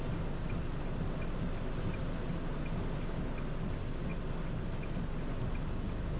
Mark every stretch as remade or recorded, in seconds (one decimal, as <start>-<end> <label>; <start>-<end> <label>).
0.0-6.2 recorded